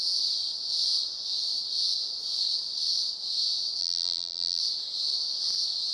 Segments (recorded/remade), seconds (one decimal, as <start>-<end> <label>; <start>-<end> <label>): 0.0-3.8 recorded; 3.8-4.6 remade; 4.6-5.9 recorded